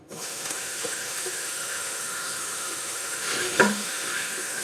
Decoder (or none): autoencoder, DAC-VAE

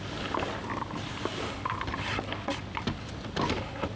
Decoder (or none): none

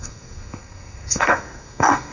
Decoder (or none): codec, SNAC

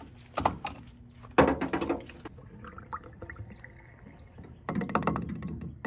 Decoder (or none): none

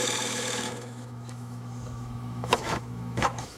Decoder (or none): autoencoder, DAC-VAE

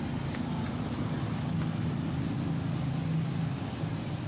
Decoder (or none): none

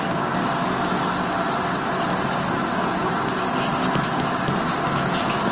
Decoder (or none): none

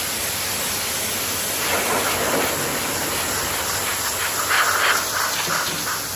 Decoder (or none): none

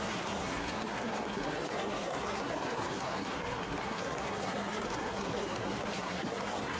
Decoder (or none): codec, SNAC